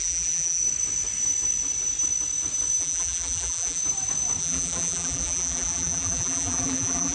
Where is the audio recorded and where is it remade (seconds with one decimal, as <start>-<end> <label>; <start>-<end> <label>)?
0.0-0.6 remade; 0.6-2.8 recorded; 2.8-3.8 remade; 3.8-4.4 recorded; 4.4-7.1 remade